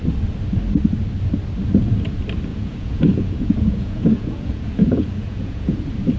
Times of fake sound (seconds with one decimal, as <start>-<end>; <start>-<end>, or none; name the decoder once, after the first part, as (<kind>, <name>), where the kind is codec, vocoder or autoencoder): 2.5-5.8 (vocoder, Vocos)